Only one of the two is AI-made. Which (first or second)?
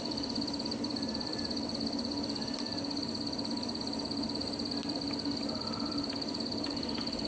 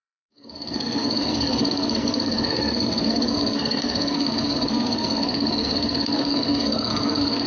second